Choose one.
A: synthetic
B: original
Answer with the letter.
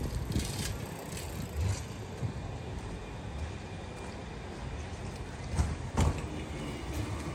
B